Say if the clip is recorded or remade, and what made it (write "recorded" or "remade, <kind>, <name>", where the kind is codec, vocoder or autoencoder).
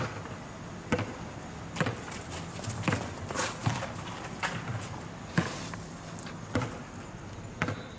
recorded